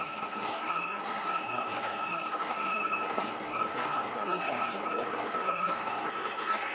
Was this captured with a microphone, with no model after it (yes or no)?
no